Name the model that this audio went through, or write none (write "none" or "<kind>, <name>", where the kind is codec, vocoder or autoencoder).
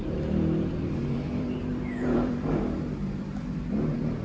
vocoder, BigVGAN v2